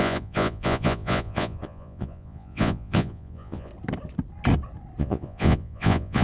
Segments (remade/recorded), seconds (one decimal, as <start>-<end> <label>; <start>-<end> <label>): 0.0-3.7 remade; 3.7-5.0 recorded; 5.0-6.2 remade